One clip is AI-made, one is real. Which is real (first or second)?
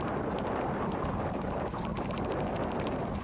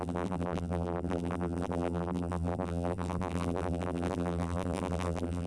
first